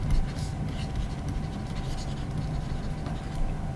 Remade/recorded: recorded